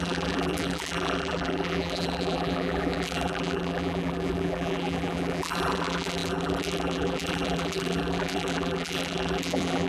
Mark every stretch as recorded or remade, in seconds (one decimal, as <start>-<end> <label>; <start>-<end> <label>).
0.0-9.9 remade